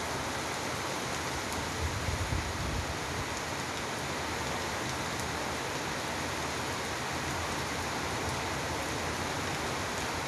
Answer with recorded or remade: recorded